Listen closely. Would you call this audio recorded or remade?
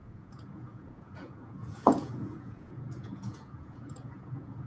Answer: remade